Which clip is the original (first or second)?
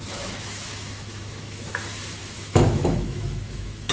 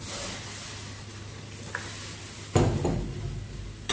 second